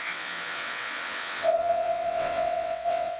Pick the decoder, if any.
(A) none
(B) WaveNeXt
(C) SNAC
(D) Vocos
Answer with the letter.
B